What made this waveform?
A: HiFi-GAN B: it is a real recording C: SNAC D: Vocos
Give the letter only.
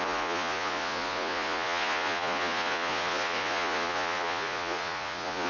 D